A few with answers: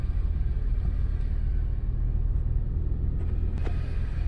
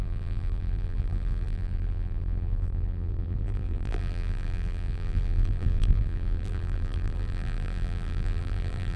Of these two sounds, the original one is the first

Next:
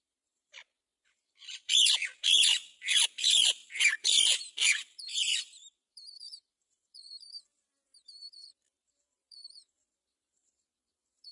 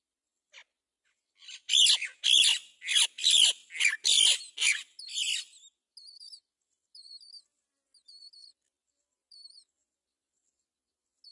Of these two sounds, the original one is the second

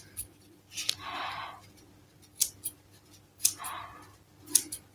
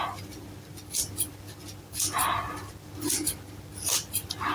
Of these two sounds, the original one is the first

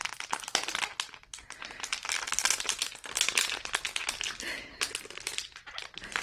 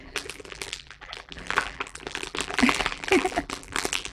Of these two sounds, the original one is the first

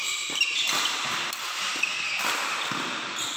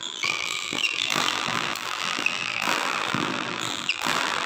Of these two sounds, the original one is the first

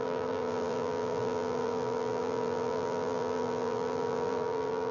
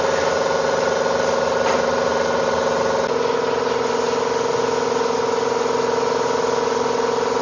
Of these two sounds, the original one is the second